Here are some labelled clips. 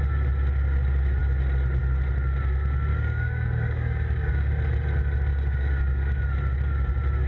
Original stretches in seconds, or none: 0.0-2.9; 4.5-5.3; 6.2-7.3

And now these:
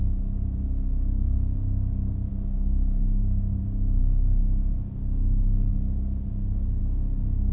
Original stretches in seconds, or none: 0.0-2.3; 3.6-4.0; 4.7-7.5

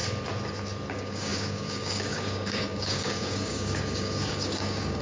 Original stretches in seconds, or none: 0.0-0.9

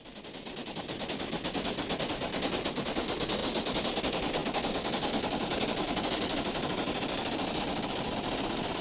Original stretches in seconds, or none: 0.0-8.8

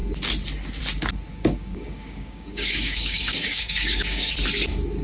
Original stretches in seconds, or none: 0.0-1.3; 4.3-5.0

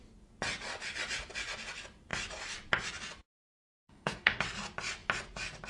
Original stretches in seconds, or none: 0.0-3.7; 4.4-5.7